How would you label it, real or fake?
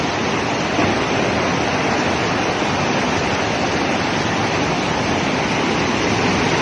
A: real